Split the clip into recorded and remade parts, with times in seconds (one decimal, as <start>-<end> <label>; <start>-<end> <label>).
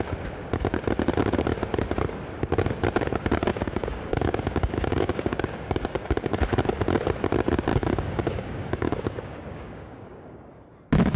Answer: 0.0-3.5 recorded; 3.5-6.4 remade; 6.4-7.7 recorded; 7.7-10.5 remade; 10.5-11.2 recorded